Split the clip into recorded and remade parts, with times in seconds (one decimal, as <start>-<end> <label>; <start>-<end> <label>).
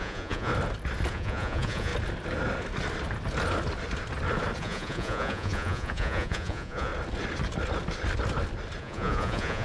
0.0-0.5 remade; 0.5-1.1 recorded; 1.1-1.9 remade; 1.9-4.6 recorded; 4.6-6.9 remade; 6.9-8.8 recorded; 8.8-9.6 remade